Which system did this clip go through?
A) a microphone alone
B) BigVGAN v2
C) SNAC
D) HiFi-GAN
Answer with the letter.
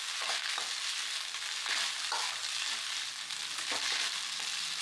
A